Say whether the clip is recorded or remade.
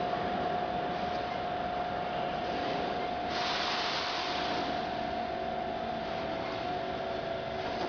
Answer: recorded